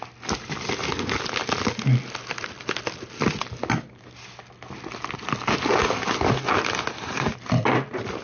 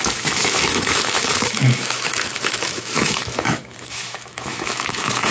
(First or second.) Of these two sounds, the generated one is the second